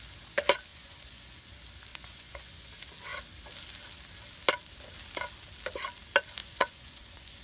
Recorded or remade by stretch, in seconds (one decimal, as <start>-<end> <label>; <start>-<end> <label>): 0.0-0.7 recorded; 0.7-1.5 remade; 1.5-1.9 recorded; 1.9-2.7 remade; 2.7-6.4 recorded; 6.4-7.4 remade